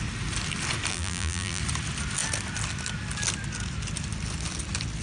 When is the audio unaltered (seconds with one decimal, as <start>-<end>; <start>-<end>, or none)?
0.0-0.9; 1.6-5.0